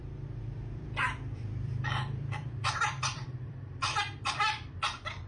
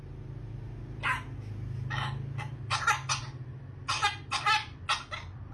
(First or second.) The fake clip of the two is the first